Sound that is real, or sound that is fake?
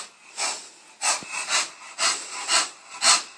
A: real